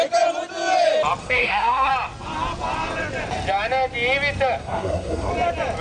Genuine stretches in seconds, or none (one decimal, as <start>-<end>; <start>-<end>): 0.0-1.2; 1.9-4.6; 5.3-5.8